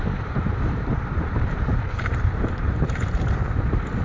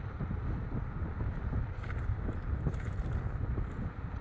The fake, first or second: first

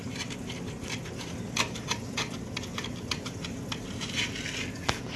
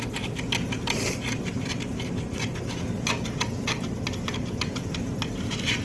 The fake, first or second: second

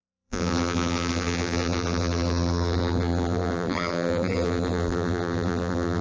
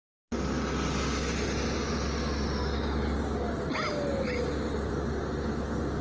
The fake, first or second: first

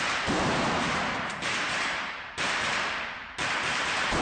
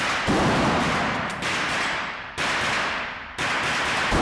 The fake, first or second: first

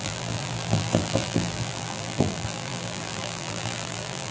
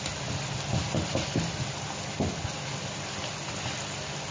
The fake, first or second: first